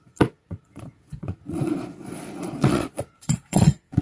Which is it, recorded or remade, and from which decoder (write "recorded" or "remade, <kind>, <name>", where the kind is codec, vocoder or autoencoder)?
remade, vocoder, Vocos